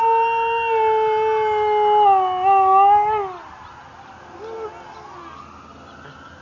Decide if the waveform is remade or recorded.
recorded